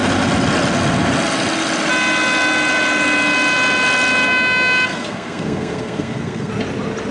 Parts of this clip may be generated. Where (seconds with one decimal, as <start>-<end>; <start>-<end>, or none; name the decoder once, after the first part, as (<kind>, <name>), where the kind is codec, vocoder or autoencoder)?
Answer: 4.9-6.5 (codec, SNAC)